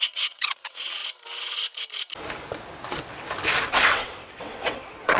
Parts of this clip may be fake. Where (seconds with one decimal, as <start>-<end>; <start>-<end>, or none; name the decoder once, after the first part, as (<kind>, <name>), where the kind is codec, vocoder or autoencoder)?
0.0-1.0 (vocoder, WaveNeXt); 3.7-5.2